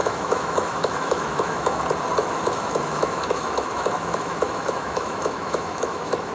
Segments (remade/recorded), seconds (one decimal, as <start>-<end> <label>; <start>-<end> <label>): 0.0-1.8 remade; 1.8-2.2 recorded; 2.2-6.3 remade